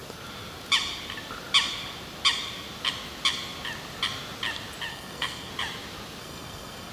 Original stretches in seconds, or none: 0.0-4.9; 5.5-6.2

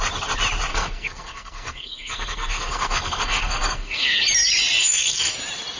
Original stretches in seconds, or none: 0.0-0.7; 4.2-4.8; 5.3-5.8

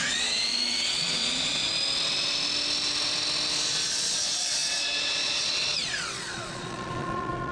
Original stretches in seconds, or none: 1.7-3.7

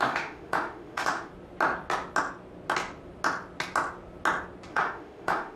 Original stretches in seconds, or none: 1.3-4.7

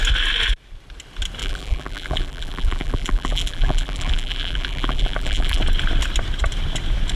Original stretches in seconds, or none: 0.0-1.4; 5.6-7.2

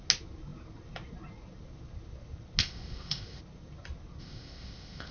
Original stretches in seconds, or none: 0.0-2.6; 3.4-4.2

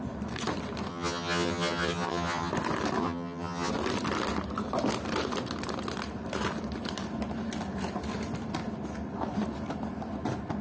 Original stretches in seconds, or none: 0.0-0.9; 2.5-3.0; 3.7-10.6